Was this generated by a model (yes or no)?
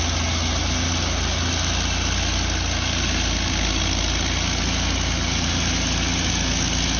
no